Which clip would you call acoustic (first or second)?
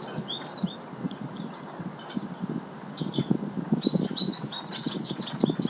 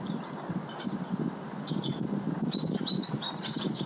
first